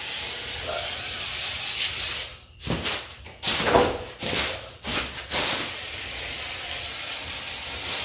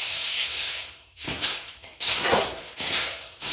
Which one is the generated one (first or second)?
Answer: second